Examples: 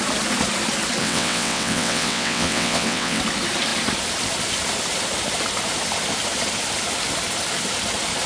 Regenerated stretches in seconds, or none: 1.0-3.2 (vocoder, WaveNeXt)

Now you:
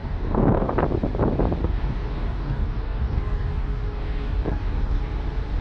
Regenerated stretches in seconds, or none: 0.0-0.7 (codec, DAC); 1.6-5.0

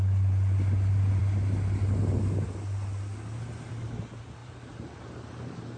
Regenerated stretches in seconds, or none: 4.4-5.8 (vocoder, BigVGAN v2)

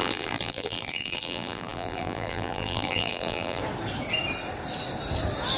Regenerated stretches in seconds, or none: 0.0-3.6 (vocoder, BigVGAN v2)

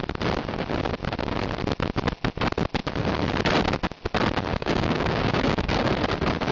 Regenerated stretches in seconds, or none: 4.5-5.9 (codec, DAC)